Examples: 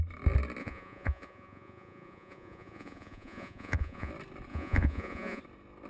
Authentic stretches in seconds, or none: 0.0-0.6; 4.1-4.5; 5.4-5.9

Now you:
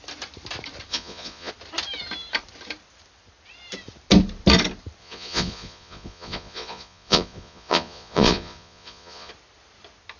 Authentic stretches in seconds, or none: 0.0-0.9; 1.5-5.0; 9.3-10.2